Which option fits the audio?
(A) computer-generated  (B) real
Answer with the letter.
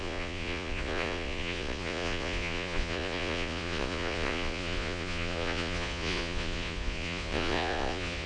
A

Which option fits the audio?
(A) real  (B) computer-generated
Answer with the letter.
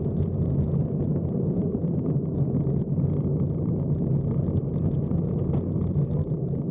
A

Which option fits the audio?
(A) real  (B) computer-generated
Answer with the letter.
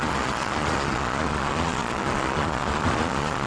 B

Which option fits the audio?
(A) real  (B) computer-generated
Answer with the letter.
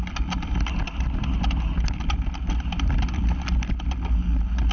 A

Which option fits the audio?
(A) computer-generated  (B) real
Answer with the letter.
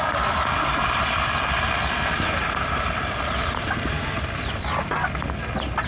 B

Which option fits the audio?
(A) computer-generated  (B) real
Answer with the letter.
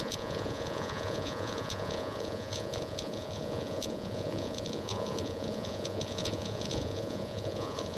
A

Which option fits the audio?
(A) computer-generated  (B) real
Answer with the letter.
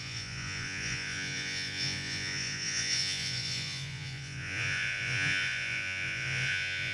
A